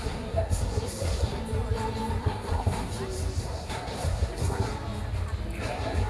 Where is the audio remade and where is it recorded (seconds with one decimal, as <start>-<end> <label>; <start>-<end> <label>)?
0.0-1.4 remade; 1.4-2.2 recorded; 2.2-2.9 remade; 2.9-3.4 recorded; 3.4-4.7 remade; 4.7-5.6 recorded; 5.6-6.1 remade

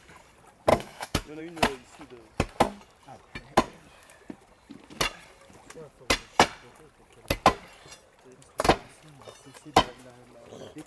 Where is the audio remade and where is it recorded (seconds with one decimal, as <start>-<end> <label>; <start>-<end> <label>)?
0.0-0.7 recorded; 0.7-1.4 remade; 1.4-10.9 recorded